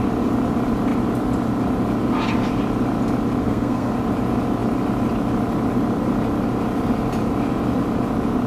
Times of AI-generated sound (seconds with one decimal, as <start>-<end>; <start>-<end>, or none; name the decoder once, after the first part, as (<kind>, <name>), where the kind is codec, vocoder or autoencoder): 3.4-3.9 (codec, SNAC)